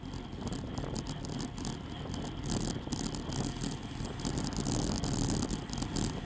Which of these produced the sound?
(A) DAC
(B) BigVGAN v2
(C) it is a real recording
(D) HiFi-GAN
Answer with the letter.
C